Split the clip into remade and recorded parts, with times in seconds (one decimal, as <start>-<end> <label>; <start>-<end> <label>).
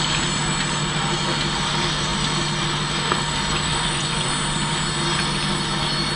0.0-3.7 recorded; 3.7-4.3 remade; 4.3-6.2 recorded